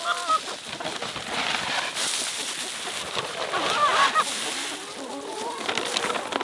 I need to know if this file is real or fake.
real